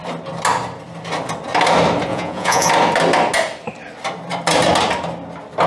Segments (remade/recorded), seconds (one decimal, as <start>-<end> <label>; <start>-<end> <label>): 0.0-2.1 recorded; 2.1-2.7 remade; 2.7-5.7 recorded